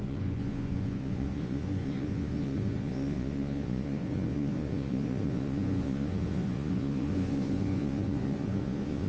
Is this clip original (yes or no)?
no